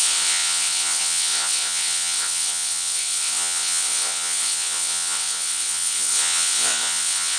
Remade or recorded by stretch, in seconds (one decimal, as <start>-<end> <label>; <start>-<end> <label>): 0.0-7.4 remade